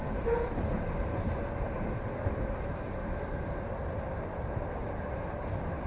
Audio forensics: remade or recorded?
remade